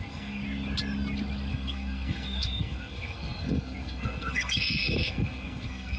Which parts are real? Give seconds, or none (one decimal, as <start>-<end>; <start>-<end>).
0.4-1.5